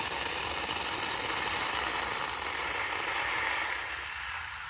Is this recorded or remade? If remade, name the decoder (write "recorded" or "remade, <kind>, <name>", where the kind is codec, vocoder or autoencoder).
recorded